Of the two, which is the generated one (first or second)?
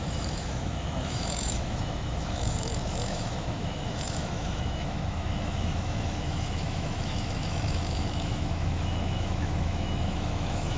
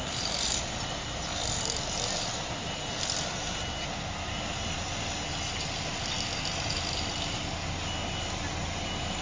first